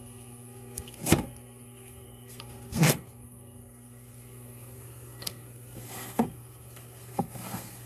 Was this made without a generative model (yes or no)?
no